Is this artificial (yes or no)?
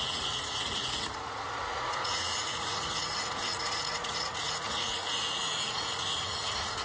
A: yes